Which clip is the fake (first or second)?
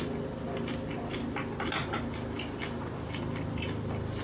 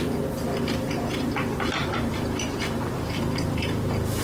second